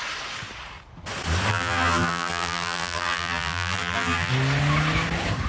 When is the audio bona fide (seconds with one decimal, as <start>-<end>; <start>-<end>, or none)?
0.0-1.5; 4.3-5.5

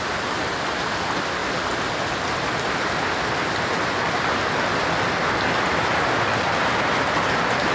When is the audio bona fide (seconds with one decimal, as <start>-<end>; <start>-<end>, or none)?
0.0-7.7